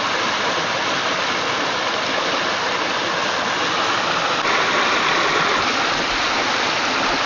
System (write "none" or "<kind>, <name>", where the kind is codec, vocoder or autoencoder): none